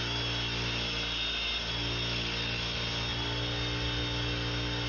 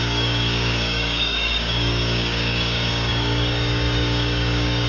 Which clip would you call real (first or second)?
first